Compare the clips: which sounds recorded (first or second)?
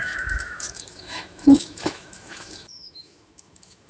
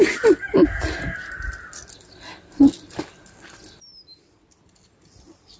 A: second